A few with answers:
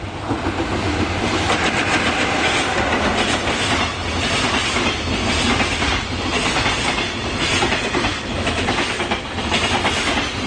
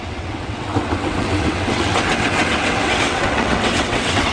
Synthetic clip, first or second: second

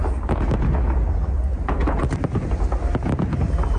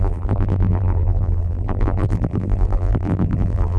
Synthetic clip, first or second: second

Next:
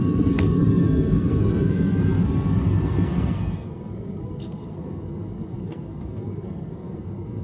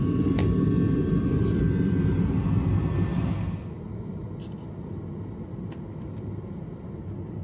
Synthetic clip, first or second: first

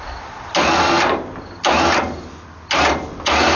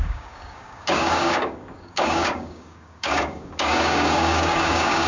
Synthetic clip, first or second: second